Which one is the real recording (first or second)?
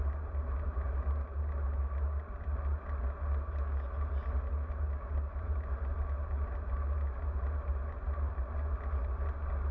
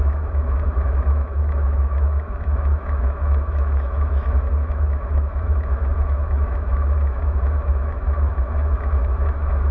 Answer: first